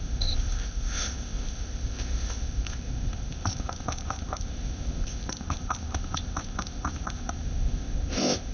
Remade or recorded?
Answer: remade